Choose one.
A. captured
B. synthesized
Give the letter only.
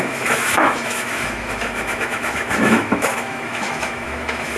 B